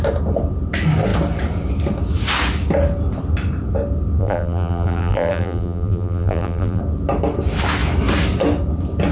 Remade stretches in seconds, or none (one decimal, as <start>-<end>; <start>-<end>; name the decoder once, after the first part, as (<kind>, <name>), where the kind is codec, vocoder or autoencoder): 4.2-6.8 (vocoder, BigVGAN v2)